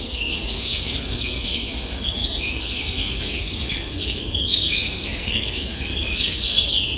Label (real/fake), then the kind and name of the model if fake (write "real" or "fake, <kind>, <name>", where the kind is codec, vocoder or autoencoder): fake, codec, SNAC